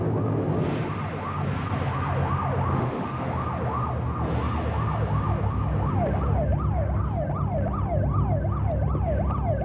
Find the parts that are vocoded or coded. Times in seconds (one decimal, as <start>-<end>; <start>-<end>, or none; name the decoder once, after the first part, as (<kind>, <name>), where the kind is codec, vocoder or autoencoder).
2.7-3.3 (autoencoder, DAC-VAE)